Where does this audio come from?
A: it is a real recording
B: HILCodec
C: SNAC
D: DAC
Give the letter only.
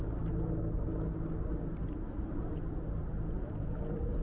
A